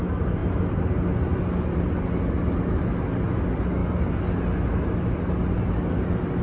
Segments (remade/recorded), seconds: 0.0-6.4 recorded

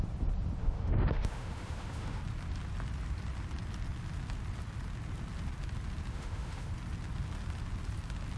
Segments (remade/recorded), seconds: 0.0-0.6 recorded; 0.6-2.2 remade; 2.2-6.1 recorded; 6.1-6.7 remade; 6.7-8.4 recorded

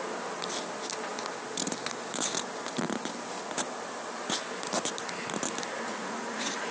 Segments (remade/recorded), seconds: 0.0-5.9 recorded; 5.9-6.7 remade